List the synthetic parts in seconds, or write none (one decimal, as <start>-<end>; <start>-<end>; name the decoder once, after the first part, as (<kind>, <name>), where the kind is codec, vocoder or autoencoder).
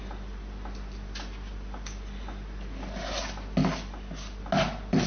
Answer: none